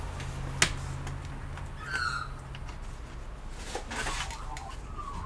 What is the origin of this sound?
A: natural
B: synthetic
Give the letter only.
A